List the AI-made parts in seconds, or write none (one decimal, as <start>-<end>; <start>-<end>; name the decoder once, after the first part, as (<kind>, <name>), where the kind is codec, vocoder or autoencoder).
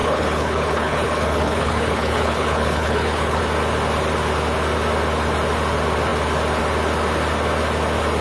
0.0-3.4 (codec, HILCodec)